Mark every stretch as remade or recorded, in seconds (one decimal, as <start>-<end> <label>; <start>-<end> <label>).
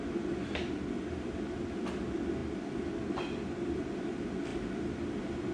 0.0-5.5 recorded